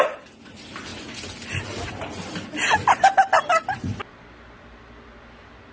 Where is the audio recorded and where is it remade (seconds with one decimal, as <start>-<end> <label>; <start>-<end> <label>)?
0.0-5.7 recorded